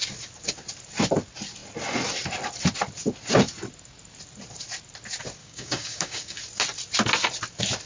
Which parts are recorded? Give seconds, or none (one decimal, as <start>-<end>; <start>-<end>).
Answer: 0.0-5.4; 6.4-7.9

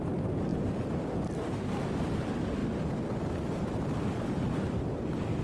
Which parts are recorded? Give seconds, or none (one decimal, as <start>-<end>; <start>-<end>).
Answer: 0.0-5.4

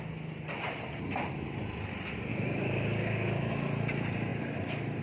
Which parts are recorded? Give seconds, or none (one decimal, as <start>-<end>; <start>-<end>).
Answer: 0.0-2.3; 3.5-5.0

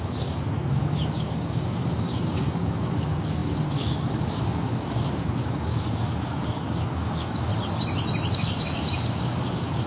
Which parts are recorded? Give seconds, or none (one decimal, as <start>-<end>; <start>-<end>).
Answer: 7.5-8.3

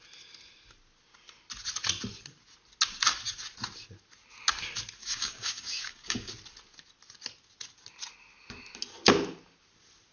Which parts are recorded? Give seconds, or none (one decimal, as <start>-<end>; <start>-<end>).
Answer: 0.0-5.0; 6.3-10.1

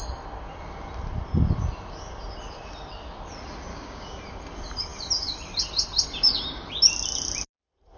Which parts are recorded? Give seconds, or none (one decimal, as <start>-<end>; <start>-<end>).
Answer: 0.0-3.7; 4.2-8.0